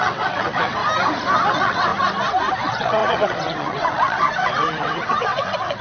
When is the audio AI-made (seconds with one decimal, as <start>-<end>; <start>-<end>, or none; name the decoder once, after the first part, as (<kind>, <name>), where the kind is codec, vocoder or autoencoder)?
0.0-0.8 (vocoder, WaveNeXt); 1.5-1.9; 2.6-5.8